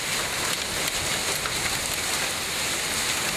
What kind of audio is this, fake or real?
real